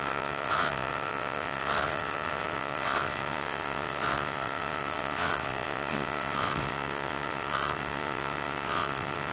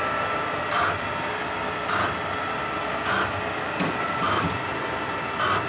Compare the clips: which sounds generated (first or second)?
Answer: first